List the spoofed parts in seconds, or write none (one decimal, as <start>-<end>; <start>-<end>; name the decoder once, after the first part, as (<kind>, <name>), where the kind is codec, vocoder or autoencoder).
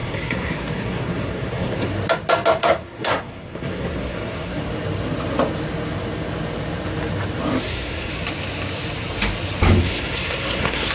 0.0-1.9 (codec, SNAC); 2.6-4.6; 7.6-8.1; 9.8-10.9